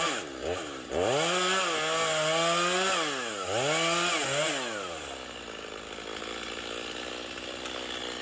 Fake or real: real